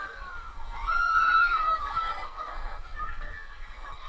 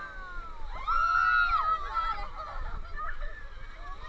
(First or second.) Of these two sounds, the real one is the second